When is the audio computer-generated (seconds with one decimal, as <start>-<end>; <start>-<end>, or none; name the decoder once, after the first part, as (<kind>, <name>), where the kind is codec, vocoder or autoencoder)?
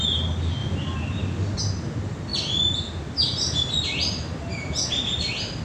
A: none